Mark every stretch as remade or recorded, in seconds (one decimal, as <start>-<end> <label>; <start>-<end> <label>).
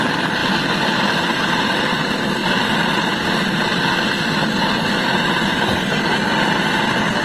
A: 0.0-7.2 recorded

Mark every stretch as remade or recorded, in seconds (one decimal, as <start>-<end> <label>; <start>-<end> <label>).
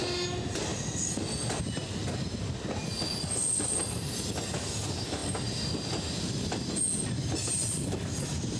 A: 0.0-8.6 recorded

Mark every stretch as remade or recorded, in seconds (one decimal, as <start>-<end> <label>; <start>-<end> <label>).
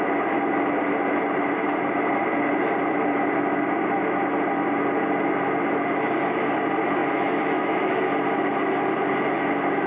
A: 0.0-7.0 recorded; 7.0-8.0 remade; 8.0-9.9 recorded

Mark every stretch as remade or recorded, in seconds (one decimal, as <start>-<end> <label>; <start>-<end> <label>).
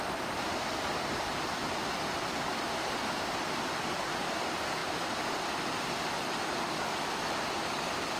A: 0.0-8.2 recorded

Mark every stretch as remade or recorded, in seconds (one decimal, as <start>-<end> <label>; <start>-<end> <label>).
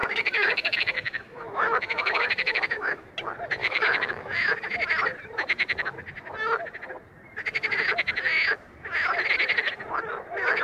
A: 0.0-3.1 remade; 3.1-3.6 recorded; 3.6-4.4 remade; 4.4-10.6 recorded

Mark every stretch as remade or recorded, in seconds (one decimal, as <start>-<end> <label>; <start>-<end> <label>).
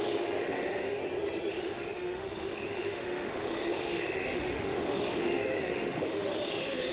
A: 0.0-1.0 remade; 1.0-1.5 recorded; 1.5-6.9 remade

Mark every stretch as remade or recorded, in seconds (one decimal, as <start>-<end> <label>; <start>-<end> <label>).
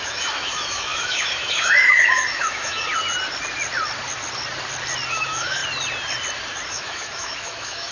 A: 0.0-2.9 remade; 2.9-5.1 recorded; 5.1-5.6 remade; 5.6-6.7 recorded; 6.7-7.9 remade